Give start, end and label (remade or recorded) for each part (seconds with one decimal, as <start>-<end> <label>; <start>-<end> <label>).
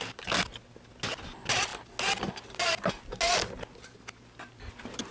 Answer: 0.0-5.1 recorded